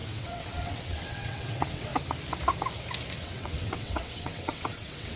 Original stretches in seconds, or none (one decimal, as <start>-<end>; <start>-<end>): 1.9-3.2